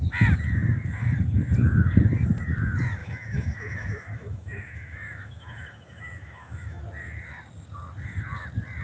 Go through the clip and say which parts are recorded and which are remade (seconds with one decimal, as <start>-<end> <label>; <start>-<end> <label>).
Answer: 0.0-3.0 recorded; 3.0-6.8 remade; 6.8-8.8 recorded